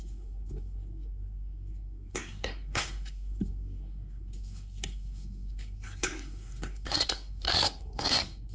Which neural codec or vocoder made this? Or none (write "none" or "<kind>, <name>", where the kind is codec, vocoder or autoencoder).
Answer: codec, SNAC